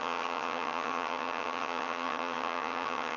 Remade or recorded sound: remade